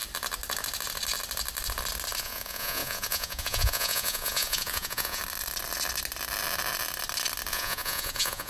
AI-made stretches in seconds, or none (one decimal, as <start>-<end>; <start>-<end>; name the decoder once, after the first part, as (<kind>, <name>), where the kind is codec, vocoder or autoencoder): 2.2-5.2 (vocoder, Vocos); 7.5-8.5

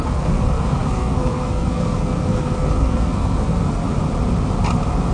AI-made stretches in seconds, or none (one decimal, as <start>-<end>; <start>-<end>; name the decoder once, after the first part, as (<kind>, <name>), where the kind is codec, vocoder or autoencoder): 0.0-3.8 (codec, SNAC)

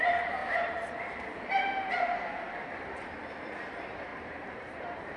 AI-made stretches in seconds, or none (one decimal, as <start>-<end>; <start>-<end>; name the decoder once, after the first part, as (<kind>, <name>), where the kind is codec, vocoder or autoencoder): 0.4-1.9 (vocoder, BigVGAN v2); 4.1-5.2

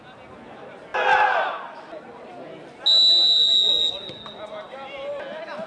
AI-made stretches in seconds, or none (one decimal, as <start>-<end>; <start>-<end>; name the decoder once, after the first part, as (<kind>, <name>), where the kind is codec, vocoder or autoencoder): none